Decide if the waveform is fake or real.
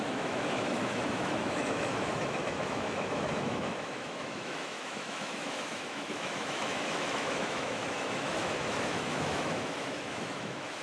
fake